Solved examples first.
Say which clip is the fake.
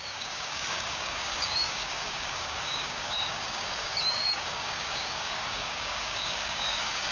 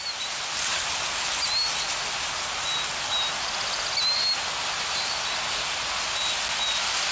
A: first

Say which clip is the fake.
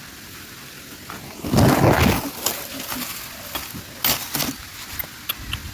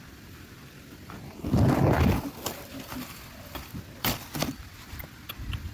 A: second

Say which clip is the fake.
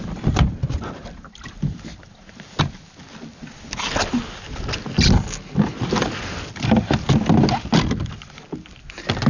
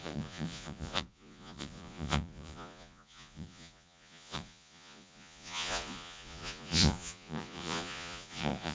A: second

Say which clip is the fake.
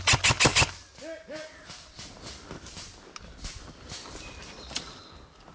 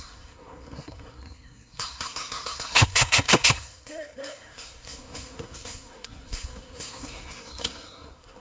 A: second